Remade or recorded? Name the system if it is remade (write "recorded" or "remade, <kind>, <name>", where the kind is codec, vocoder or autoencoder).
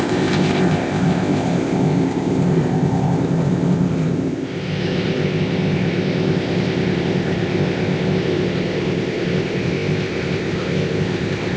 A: remade, codec, ZipCodec